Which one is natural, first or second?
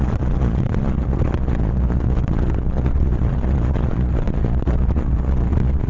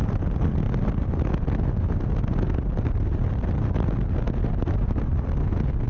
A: second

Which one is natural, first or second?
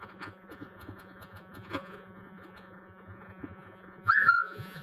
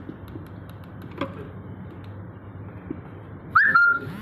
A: second